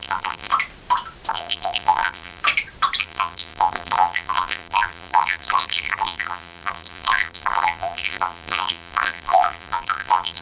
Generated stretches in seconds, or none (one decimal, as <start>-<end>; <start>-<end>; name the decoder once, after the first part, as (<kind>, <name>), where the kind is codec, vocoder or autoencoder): 0.0-0.5 (vocoder, BigVGAN v2); 1.3-2.4; 3.0-10.4